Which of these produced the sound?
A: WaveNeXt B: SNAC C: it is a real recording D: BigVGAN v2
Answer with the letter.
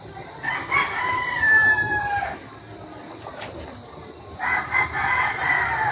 D